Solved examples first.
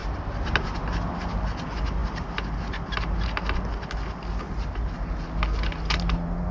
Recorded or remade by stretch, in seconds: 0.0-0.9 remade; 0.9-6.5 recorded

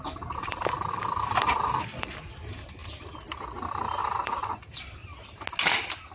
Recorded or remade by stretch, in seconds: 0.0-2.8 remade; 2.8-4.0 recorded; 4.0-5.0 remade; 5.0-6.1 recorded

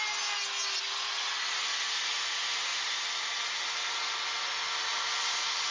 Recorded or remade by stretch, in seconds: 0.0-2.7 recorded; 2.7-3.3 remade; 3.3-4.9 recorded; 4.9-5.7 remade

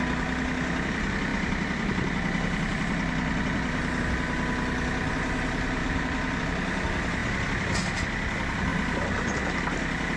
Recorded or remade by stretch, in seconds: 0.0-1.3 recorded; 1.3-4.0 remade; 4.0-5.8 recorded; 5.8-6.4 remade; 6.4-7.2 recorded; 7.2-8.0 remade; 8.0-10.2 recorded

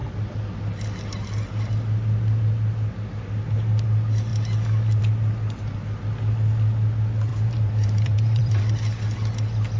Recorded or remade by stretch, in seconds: 0.0-7.3 recorded; 7.3-8.7 remade; 8.7-9.8 recorded